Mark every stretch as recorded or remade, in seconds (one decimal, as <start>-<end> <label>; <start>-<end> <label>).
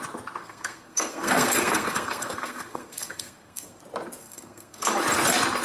0.0-0.4 recorded; 0.4-3.8 remade; 3.8-4.2 recorded; 4.2-4.9 remade; 4.9-5.6 recorded